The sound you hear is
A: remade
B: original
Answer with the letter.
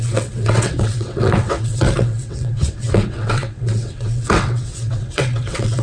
A